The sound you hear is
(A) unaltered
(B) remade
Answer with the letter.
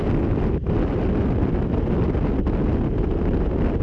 A